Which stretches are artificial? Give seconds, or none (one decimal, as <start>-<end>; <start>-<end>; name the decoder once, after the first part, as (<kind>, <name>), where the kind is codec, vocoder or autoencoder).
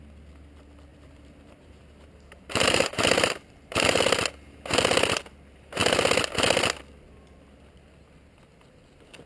0.9-4.0 (vocoder, BigVGAN v2)